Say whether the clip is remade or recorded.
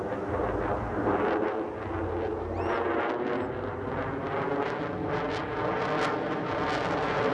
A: recorded